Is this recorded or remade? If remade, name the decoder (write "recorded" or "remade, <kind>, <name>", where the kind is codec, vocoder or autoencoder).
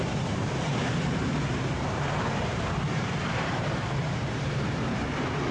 remade, vocoder, BigVGAN v2